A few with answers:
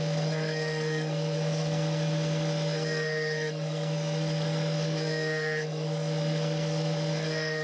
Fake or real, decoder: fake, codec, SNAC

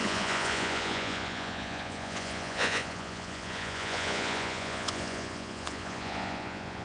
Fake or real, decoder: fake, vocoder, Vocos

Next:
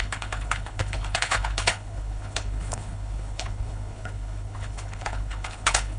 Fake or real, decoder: fake, codec, HILCodec